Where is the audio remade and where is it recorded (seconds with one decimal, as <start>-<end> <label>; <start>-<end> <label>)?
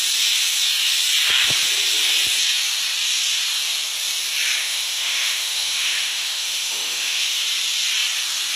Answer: 0.0-4.6 recorded; 4.6-7.4 remade; 7.4-8.6 recorded